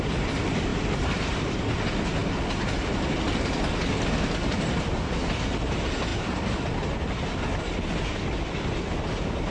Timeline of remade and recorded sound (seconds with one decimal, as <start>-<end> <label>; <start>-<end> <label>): 0.0-0.7 recorded; 0.7-1.6 remade; 1.6-9.5 recorded